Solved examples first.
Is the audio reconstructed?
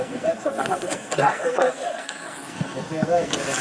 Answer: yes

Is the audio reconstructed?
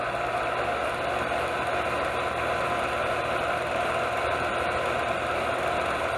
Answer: no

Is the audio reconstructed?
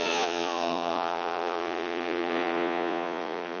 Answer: yes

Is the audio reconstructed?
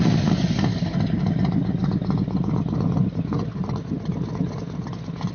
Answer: no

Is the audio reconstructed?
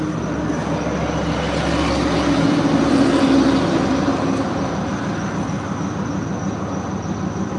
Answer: no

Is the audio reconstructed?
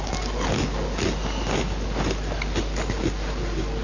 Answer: no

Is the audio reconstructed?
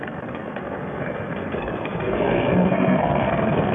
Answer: yes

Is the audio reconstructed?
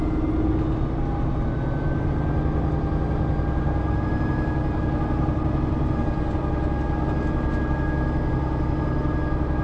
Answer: no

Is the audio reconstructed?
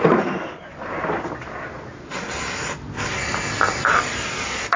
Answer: no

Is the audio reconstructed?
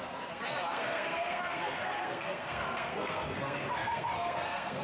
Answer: yes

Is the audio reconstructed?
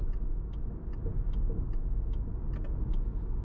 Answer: no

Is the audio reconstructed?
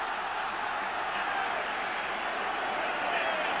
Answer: no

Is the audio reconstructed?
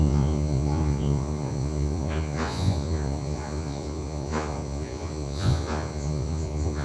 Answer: yes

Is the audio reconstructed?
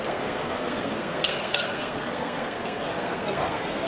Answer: yes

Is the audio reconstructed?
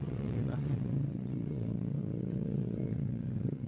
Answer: yes